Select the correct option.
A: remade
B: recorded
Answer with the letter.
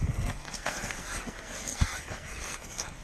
A